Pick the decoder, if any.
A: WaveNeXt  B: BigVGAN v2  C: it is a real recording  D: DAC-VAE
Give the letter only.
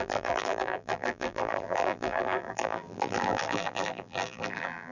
B